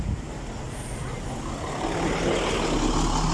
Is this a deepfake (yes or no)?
no